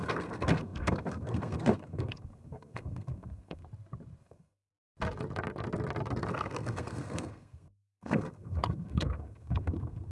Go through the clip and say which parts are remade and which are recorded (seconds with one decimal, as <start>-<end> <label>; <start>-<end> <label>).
0.0-3.6 remade; 3.6-4.2 recorded; 4.2-4.7 remade; 4.7-6.3 recorded; 6.3-10.1 remade